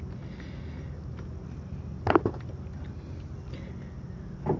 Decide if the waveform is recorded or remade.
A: recorded